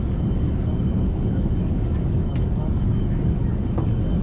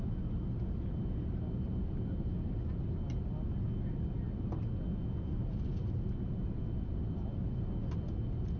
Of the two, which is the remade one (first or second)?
first